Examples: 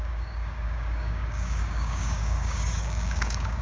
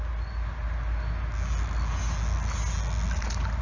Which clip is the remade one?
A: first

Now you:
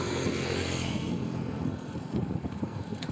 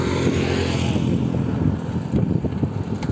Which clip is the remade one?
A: first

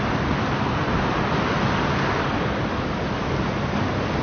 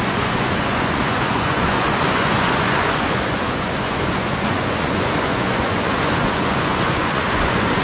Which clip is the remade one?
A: second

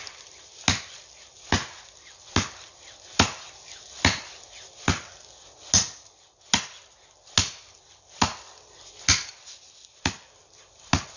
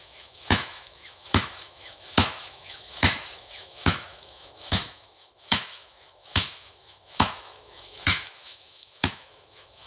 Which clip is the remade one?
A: second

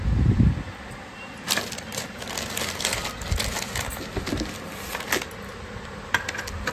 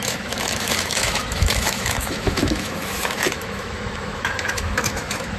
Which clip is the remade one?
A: second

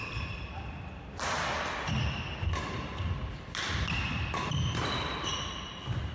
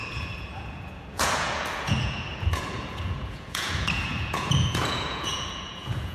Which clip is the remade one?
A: second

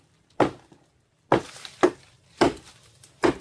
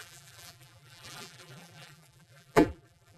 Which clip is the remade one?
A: second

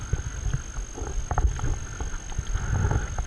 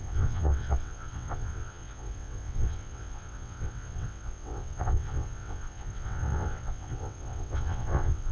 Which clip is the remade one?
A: second